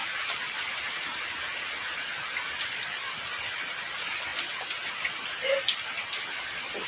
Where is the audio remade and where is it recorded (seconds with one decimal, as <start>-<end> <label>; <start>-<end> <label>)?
0.0-1.2 remade; 1.2-6.9 recorded